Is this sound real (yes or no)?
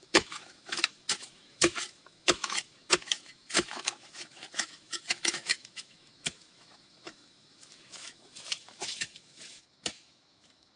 no